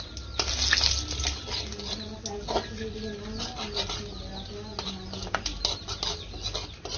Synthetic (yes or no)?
no